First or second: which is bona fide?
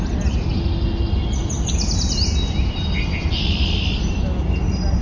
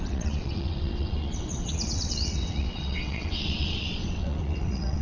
first